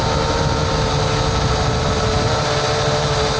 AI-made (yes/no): no